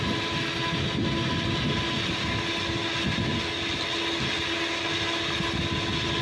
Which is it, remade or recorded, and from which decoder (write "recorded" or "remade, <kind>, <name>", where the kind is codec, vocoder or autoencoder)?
recorded